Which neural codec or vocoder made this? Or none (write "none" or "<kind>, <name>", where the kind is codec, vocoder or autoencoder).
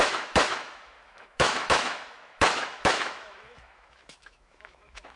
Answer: autoencoder, DAC-VAE